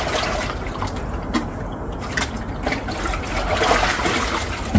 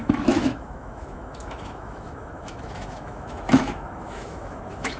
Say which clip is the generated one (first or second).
second